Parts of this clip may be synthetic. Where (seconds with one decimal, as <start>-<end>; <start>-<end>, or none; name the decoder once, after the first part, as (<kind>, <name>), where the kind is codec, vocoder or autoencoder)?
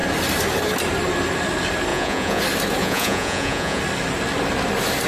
1.9-2.4 (vocoder, Vocos); 2.8-3.8